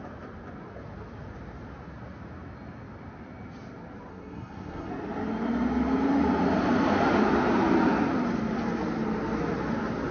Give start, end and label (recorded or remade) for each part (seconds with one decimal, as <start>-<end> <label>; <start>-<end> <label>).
0.0-4.1 recorded; 4.1-4.9 remade; 4.9-10.1 recorded